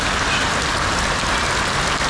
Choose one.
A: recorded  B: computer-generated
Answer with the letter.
A